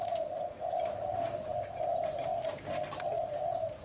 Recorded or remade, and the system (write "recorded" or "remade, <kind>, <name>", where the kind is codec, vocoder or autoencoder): recorded